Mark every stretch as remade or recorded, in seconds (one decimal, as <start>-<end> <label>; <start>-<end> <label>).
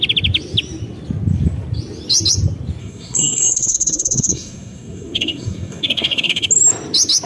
0.0-2.8 recorded; 2.8-6.5 remade; 6.5-7.3 recorded